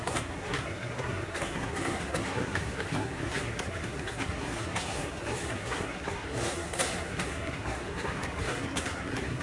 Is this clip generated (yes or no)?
yes